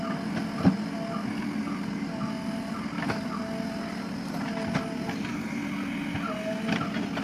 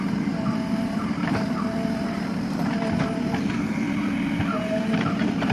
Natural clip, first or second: first